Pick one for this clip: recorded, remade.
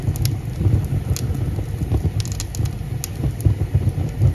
recorded